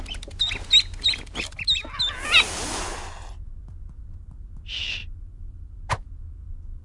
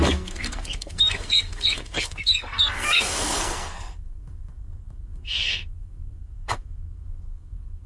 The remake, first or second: second